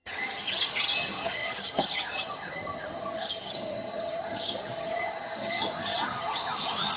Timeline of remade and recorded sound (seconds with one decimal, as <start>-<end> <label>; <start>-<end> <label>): 0.0-7.0 remade